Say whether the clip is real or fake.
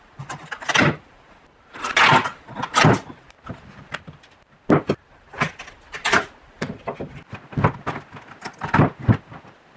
real